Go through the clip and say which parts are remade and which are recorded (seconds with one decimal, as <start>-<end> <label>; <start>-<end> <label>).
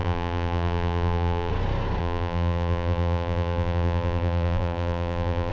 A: 0.0-1.5 remade; 1.5-2.0 recorded; 2.0-5.5 remade